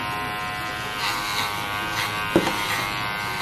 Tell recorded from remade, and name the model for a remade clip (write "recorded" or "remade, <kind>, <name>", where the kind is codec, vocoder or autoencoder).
recorded